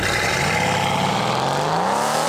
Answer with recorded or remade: recorded